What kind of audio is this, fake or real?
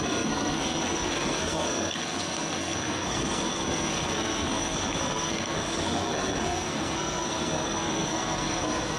fake